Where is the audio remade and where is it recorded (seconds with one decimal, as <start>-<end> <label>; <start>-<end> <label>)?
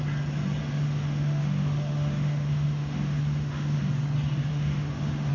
0.0-0.6 recorded; 0.6-3.8 remade; 3.8-4.5 recorded; 4.5-5.3 remade